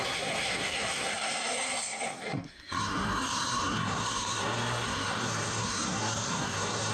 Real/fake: fake